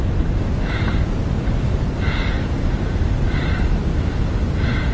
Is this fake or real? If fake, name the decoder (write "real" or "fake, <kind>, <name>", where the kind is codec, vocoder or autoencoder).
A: real